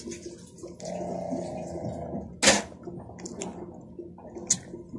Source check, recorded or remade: recorded